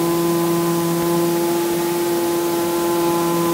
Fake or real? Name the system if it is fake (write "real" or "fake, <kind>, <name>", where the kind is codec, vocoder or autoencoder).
real